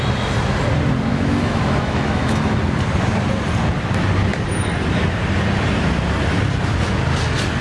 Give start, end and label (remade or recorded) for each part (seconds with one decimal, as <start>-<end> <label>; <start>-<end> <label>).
0.0-1.1 recorded; 1.1-2.6 remade; 2.6-7.6 recorded